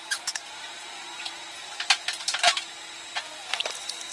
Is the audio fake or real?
fake